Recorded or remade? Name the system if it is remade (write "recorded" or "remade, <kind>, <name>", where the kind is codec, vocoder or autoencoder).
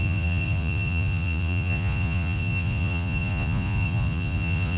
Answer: remade, vocoder, Vocos